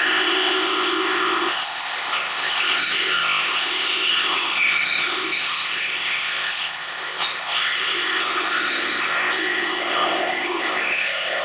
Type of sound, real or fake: fake